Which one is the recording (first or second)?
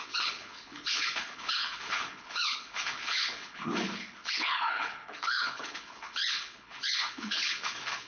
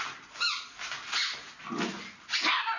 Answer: second